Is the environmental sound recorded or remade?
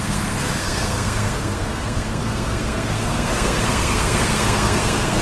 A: remade